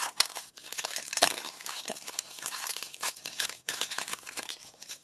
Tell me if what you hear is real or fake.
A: fake